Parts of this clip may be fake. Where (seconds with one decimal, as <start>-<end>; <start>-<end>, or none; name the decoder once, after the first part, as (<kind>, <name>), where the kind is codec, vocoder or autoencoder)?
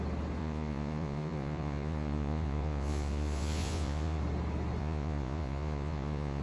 0.4-4.2 (vocoder, Vocos); 4.8-6.4